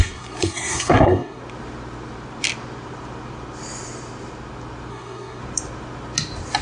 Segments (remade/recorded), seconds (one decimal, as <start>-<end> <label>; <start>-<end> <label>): 0.0-1.4 remade; 1.4-4.9 recorded; 4.9-5.4 remade; 5.4-6.6 recorded